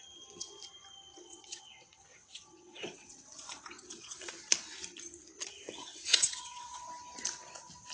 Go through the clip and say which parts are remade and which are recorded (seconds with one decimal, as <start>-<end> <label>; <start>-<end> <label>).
0.0-1.1 recorded; 1.1-4.3 remade; 4.3-5.8 recorded; 5.8-6.9 remade; 6.9-7.9 recorded